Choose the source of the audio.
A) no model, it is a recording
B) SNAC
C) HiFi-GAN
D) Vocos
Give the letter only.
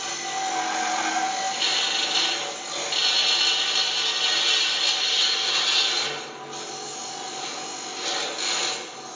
A